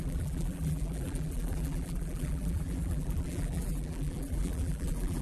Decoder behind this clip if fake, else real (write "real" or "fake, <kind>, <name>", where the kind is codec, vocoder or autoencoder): fake, vocoder, BigVGAN v2